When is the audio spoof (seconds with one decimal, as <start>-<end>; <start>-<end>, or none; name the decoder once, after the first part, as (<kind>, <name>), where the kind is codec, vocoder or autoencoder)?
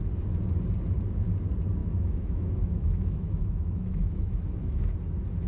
1.8-4.9 (autoencoder, DAC-VAE)